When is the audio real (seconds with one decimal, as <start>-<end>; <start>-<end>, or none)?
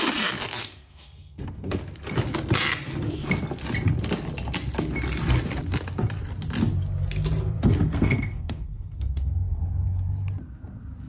0.0-0.6; 1.8-7.9; 9.6-11.1